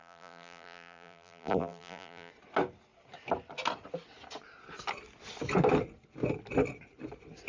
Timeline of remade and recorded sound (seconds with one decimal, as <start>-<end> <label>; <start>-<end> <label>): 0.0-2.3 remade; 2.3-7.5 recorded

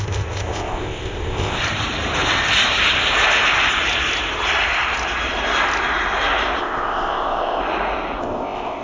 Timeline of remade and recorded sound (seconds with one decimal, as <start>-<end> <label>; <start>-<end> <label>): 0.0-1.6 remade; 1.6-6.6 recorded; 6.6-7.6 remade; 7.6-8.2 recorded; 8.2-8.8 remade

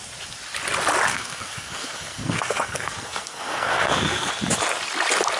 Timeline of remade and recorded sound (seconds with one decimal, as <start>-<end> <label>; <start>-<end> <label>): 0.0-1.1 recorded; 1.1-4.3 remade; 4.3-5.4 recorded

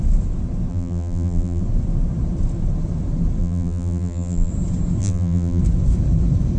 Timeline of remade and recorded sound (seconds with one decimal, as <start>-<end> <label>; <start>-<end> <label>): 0.0-0.7 recorded; 0.7-1.6 remade; 1.6-3.4 recorded; 3.4-4.5 remade; 4.5-5.0 recorded; 5.0-5.6 remade; 5.6-6.6 recorded

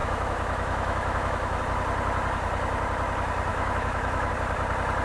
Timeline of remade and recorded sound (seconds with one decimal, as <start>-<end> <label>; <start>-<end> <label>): 0.0-1.6 remade; 1.6-3.5 recorded; 3.5-4.3 remade; 4.3-5.0 recorded

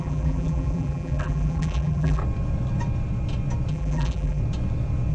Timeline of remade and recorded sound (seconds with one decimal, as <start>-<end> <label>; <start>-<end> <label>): 0.0-2.2 remade; 2.2-3.7 recorded; 3.7-4.4 remade; 4.4-5.1 recorded